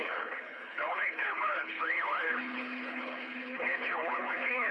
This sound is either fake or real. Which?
fake